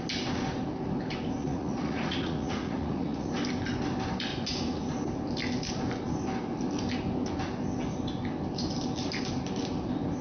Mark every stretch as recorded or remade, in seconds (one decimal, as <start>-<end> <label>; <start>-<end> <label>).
0.0-1.4 recorded; 1.4-3.3 remade; 3.3-10.2 recorded